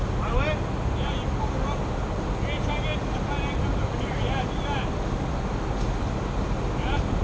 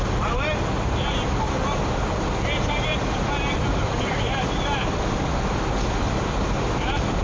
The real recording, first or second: first